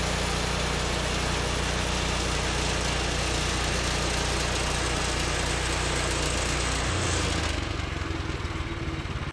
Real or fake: real